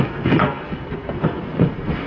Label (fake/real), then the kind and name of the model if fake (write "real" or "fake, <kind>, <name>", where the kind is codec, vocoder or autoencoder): fake, codec, SNAC